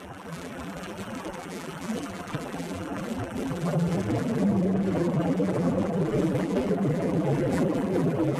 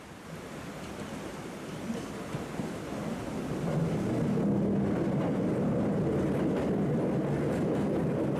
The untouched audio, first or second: second